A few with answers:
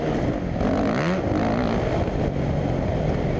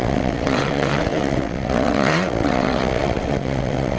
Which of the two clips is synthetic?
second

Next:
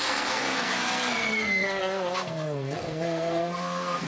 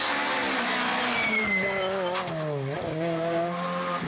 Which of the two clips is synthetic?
first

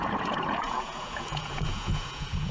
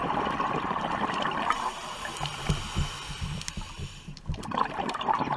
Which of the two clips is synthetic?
first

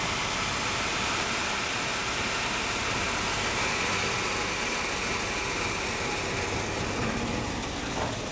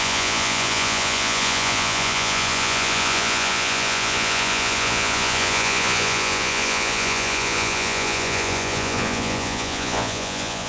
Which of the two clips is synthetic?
second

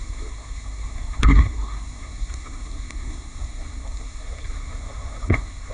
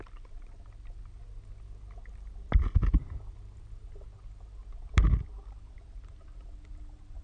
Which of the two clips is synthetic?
first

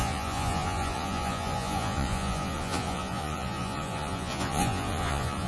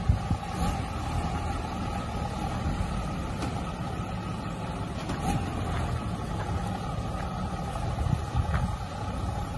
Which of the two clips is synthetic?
first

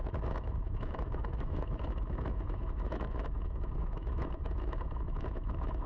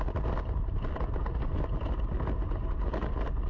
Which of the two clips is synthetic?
first